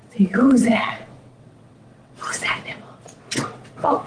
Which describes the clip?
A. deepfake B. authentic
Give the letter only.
A